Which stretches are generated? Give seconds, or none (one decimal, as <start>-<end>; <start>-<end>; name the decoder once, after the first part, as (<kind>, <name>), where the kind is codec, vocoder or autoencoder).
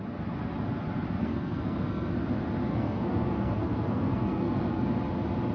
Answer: 1.2-2.1 (codec, SNAC); 2.7-4.8